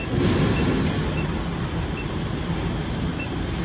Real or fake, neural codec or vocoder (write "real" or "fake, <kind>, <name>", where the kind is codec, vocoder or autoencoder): real